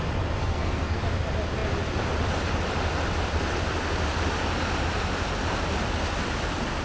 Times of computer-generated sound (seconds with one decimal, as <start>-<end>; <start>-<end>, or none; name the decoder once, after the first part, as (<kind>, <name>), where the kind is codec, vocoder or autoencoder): 0.4-1.0 (codec, SNAC)